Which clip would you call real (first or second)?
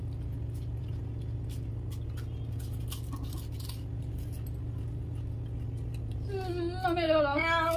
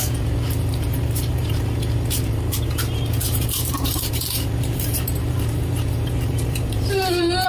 first